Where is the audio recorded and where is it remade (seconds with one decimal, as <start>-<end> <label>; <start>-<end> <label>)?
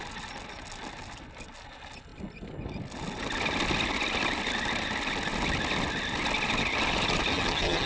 0.0-7.3 recorded; 7.3-7.9 remade